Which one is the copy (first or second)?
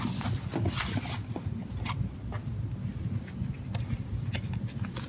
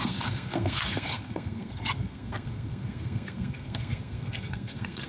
second